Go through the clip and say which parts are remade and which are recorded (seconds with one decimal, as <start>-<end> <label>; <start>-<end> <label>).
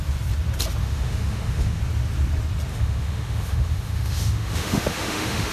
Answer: 0.0-0.8 recorded; 0.8-1.8 remade; 1.8-2.7 recorded; 2.7-5.5 remade